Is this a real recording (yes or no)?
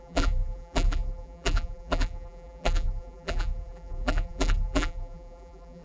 no